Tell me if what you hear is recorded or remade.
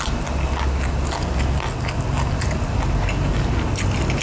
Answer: recorded